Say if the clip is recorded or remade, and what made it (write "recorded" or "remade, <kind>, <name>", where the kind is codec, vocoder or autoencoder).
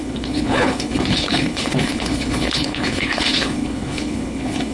remade, codec, HILCodec